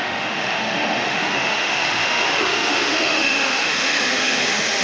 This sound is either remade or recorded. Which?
remade